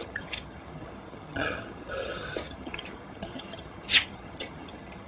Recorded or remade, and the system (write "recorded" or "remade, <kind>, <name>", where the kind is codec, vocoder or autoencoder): remade, vocoder, HiFi-GAN